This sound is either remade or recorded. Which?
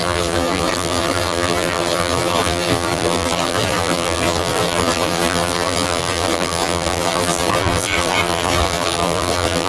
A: remade